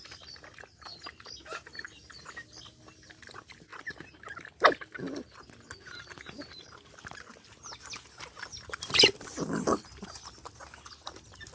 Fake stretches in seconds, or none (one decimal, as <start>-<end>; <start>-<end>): none